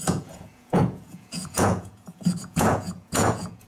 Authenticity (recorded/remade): remade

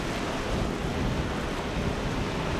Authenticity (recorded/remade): recorded